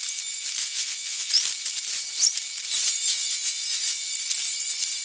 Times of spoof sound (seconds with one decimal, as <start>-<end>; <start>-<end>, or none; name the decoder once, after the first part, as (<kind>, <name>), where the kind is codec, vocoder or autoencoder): 0.6-1.3 (vocoder, Vocos); 3.1-4.1